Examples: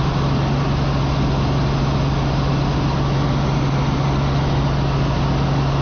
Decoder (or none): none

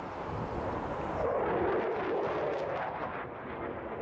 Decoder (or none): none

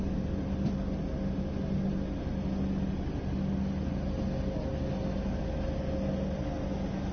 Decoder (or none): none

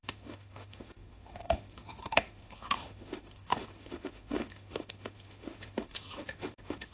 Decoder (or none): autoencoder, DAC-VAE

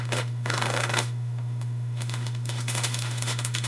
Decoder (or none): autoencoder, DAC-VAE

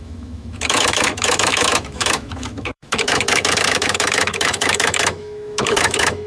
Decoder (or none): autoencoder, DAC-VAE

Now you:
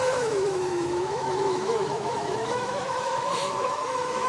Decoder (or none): autoencoder, DAC-VAE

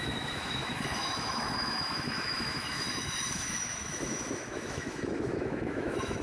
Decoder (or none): autoencoder, DAC-VAE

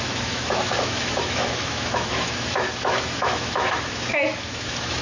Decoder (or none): autoencoder, DAC-VAE